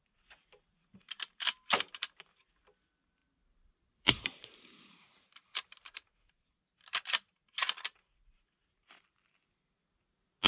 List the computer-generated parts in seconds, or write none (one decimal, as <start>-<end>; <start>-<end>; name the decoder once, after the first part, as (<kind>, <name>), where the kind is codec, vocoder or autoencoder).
3.2-6.6 (vocoder, BigVGAN v2)